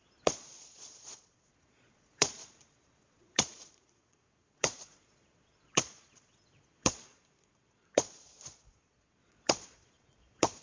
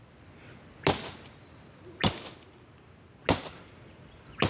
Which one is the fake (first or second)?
first